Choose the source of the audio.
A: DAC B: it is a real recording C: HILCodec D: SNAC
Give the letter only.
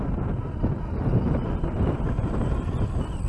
B